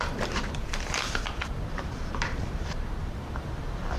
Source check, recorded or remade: remade